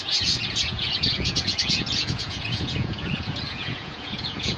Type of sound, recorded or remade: remade